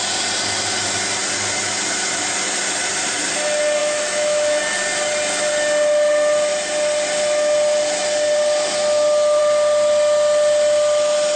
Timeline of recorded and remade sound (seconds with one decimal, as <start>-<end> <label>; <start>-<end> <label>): 0.0-3.8 recorded; 3.8-4.6 remade; 4.6-11.4 recorded